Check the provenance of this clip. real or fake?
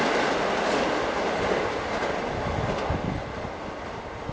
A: real